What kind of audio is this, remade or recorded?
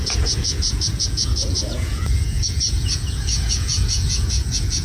remade